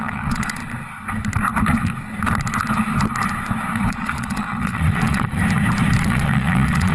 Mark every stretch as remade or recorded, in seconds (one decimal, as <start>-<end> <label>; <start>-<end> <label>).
0.0-0.6 remade; 0.6-3.9 recorded; 3.9-5.4 remade; 5.4-6.0 recorded; 6.0-6.9 remade